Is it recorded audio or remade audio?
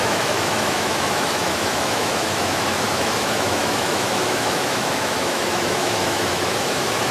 remade